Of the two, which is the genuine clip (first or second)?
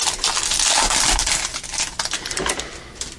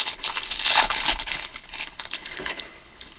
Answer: first